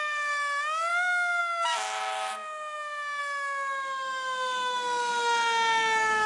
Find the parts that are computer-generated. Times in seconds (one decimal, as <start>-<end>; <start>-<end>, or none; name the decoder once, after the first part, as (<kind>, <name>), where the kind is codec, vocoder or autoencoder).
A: 0.0-0.9 (autoencoder, DAC-VAE); 1.4-2.3; 3.2-6.3